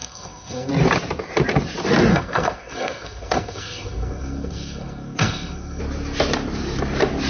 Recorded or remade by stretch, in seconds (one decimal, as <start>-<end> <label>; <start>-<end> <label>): 0.0-0.7 remade; 0.7-2.1 recorded; 2.1-5.8 remade; 5.8-7.3 recorded